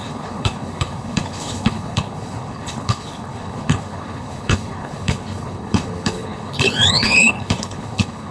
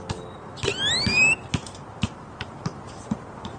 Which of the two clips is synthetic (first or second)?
first